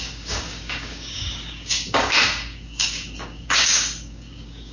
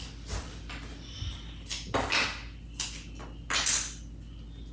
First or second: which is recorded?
second